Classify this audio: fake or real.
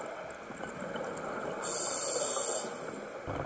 real